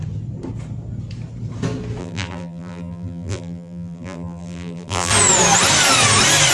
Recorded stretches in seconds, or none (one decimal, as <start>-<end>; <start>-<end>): 0.0-2.0; 5.1-6.5